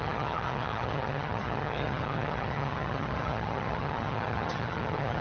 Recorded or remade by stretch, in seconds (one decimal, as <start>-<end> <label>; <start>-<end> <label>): 0.0-5.2 remade